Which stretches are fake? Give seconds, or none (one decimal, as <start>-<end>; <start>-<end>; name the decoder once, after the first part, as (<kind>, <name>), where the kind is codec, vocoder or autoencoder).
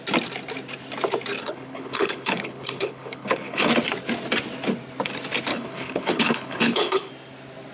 1.4-3.7 (codec, HILCodec); 5.5-7.1